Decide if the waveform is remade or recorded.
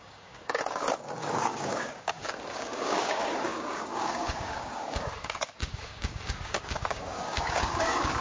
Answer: remade